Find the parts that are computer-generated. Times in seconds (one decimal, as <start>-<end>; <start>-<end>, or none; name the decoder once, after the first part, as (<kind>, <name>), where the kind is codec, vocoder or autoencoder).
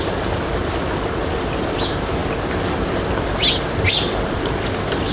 0.0-0.6 (vocoder, BigVGAN v2); 1.3-2.2; 3.9-5.1